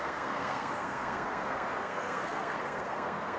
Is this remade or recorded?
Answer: remade